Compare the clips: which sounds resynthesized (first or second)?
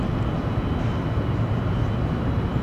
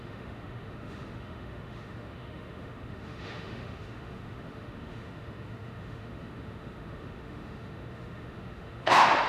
second